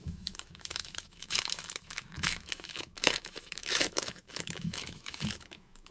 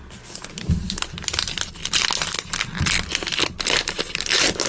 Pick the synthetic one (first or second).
first